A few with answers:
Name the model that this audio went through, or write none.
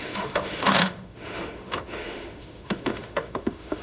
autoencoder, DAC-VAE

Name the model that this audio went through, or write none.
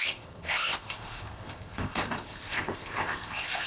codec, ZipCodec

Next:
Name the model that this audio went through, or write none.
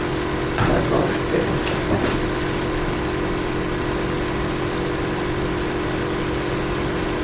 none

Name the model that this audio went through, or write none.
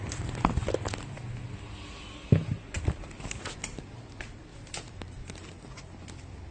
none